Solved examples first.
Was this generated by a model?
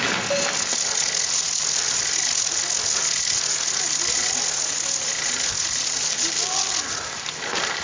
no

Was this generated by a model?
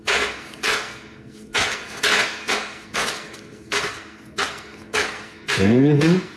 yes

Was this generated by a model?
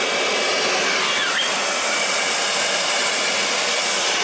no